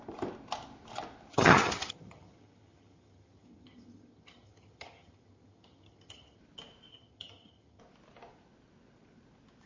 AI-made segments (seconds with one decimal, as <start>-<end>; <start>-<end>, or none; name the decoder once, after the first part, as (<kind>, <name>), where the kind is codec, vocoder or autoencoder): 1.3-6.4 (vocoder, HiFi-GAN); 6.9-7.8